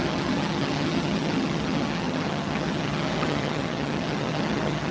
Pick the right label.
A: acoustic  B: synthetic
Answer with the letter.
B